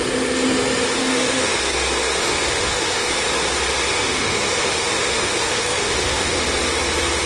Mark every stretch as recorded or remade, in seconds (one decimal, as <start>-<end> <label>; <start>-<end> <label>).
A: 0.0-1.0 recorded; 1.0-1.6 remade; 1.6-2.2 recorded; 2.2-3.1 remade; 3.1-3.9 recorded; 3.9-6.4 remade; 6.4-7.3 recorded